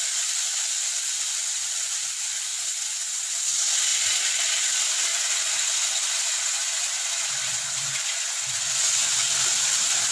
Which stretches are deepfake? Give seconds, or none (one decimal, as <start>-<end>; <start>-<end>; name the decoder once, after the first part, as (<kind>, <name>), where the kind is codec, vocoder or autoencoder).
2.5-3.3 (vocoder, Vocos); 5.1-9.3